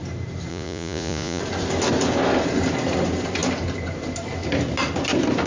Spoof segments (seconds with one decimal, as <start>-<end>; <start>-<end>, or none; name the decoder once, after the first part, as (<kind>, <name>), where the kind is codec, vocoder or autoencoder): 0.5-1.4 (vocoder, Vocos)